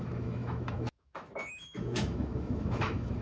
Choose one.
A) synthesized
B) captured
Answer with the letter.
A